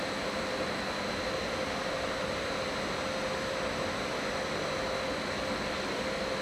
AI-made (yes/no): no